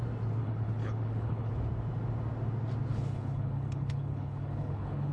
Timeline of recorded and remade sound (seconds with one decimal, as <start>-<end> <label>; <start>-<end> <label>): 0.0-0.4 recorded; 0.4-1.5 remade; 1.5-2.9 recorded; 2.9-5.1 remade